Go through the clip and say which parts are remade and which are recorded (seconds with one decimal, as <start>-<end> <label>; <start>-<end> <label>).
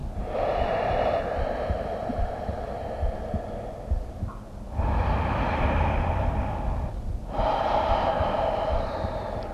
0.0-2.3 remade; 2.3-9.5 recorded